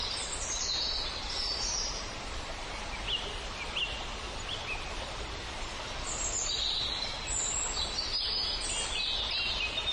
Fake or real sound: real